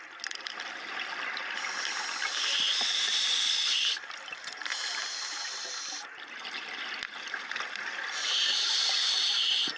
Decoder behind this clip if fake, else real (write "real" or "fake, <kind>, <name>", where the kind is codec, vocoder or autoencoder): real